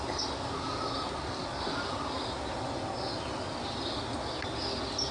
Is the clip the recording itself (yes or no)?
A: yes